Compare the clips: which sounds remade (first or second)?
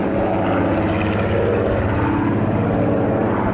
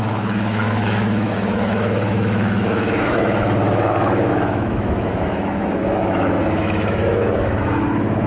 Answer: second